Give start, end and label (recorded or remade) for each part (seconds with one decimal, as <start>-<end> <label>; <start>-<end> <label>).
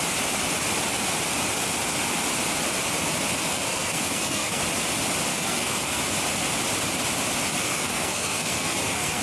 0.0-3.5 recorded; 3.5-4.6 remade; 4.6-5.3 recorded; 5.3-6.0 remade; 6.0-7.6 recorded; 7.6-9.2 remade